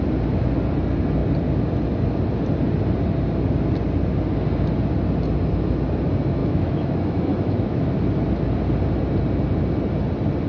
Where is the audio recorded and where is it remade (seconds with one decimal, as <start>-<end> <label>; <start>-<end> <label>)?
0.0-6.4 recorded; 6.4-7.9 remade; 7.9-10.5 recorded